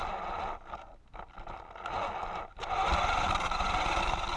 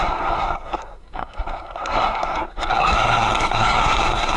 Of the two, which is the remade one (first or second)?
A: second